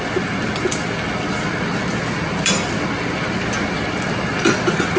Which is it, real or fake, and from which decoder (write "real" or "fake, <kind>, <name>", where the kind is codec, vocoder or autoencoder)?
real